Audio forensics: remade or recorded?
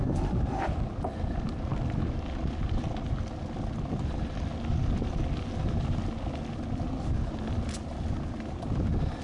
recorded